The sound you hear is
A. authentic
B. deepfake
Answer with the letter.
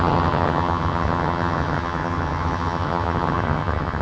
B